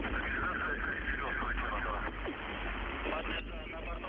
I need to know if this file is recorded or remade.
recorded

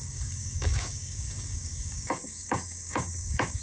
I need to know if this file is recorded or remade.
remade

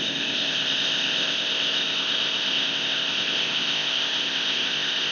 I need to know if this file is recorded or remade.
remade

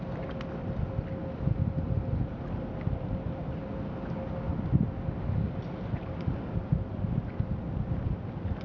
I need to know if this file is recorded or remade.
recorded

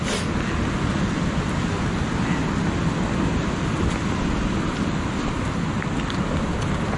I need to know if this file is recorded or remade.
recorded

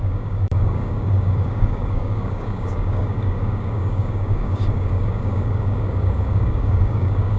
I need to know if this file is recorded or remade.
remade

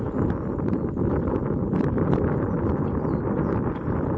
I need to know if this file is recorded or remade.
remade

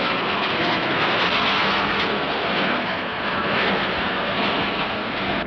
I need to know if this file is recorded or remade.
remade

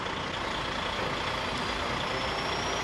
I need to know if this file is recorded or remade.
recorded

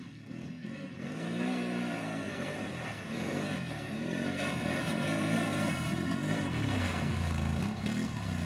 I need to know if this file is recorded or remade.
remade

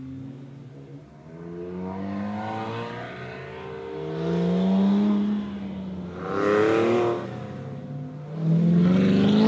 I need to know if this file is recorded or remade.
recorded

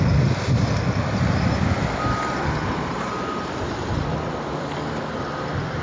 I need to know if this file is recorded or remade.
recorded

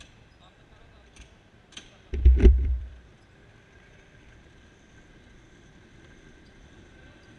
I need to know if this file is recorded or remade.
remade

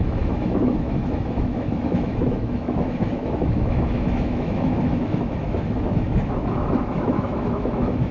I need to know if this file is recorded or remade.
remade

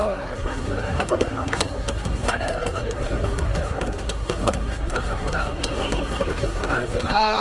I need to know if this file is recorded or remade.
remade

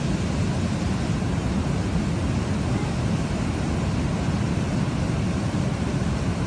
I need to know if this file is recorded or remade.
recorded